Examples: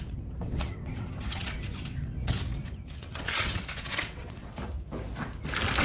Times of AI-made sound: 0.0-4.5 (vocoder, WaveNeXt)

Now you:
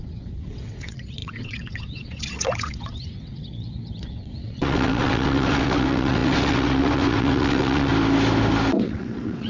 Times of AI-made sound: 0.0-7.9 (vocoder, WaveNeXt); 8.7-9.5

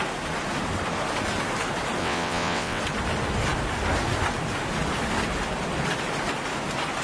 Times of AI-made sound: 2.0-2.8 (vocoder, WaveNeXt)